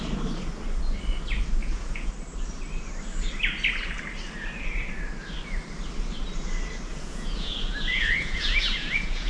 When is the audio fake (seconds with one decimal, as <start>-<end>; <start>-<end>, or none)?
1.6-2.1; 6.9-9.3